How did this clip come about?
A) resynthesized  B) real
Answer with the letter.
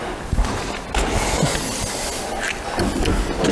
B